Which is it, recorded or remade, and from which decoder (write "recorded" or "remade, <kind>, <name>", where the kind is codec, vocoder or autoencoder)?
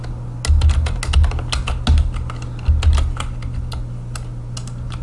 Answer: recorded